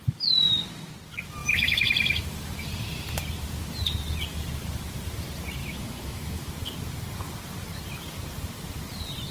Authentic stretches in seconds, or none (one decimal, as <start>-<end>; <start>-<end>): 0.0-5.6; 6.5-9.3